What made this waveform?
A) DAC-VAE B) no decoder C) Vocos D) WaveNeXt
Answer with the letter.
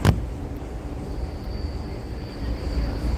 B